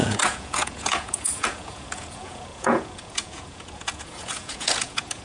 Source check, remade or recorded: remade